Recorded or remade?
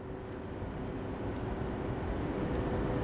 recorded